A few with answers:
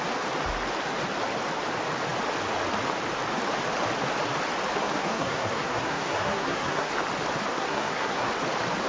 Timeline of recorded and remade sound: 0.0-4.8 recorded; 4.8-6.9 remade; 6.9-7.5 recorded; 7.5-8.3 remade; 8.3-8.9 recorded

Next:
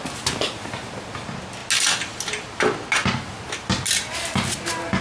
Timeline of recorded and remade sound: 0.0-5.0 recorded

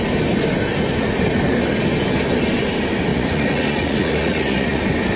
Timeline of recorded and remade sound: 0.0-3.1 recorded; 3.1-4.8 remade; 4.8-5.2 recorded

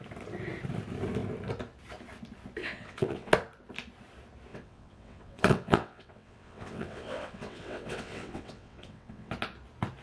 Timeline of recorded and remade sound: 0.0-2.6 recorded; 2.6-3.3 remade; 3.3-4.5 recorded; 4.5-9.3 remade; 9.3-10.0 recorded

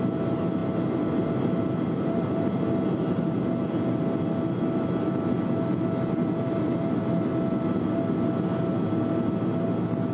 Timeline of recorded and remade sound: 0.0-10.1 recorded

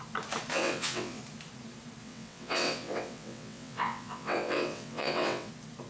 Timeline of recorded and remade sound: 0.0-0.5 recorded; 0.5-1.2 remade; 1.2-2.0 recorded; 2.0-5.5 remade; 5.5-5.9 recorded

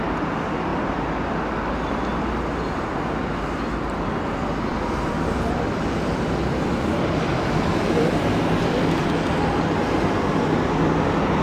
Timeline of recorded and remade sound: 0.0-0.7 recorded; 0.7-2.3 remade; 2.3-4.7 recorded; 4.7-9.8 remade; 9.8-11.4 recorded

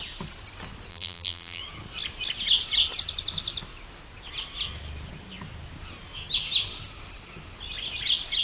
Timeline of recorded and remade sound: 0.0-0.9 recorded; 0.9-1.6 remade; 1.6-8.4 recorded